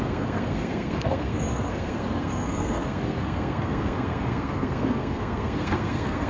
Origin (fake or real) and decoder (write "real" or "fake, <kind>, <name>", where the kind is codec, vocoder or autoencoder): fake, codec, SNAC